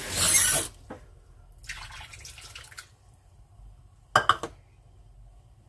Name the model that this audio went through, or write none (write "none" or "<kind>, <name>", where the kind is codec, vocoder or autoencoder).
none